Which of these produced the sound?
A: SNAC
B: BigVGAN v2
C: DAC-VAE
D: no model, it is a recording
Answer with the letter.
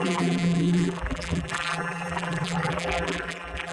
B